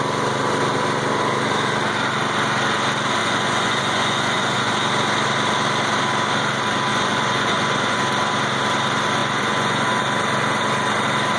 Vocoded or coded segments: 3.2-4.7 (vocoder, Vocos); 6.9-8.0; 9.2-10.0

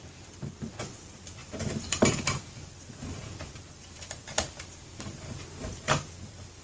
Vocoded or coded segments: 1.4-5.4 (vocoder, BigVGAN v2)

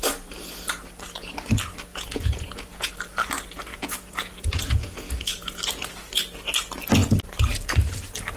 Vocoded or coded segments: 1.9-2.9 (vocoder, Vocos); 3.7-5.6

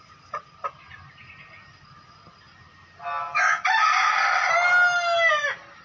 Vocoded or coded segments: 4.0-4.5 (vocoder, HiFi-GAN)